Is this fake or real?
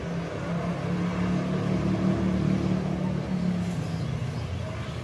real